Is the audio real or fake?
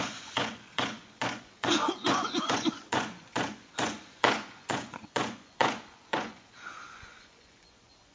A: fake